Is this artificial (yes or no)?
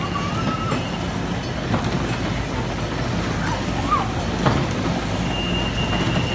no